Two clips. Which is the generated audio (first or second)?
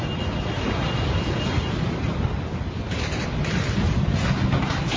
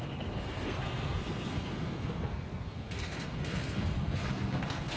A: second